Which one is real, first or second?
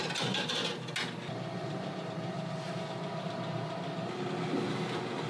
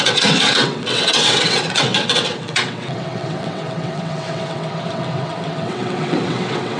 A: first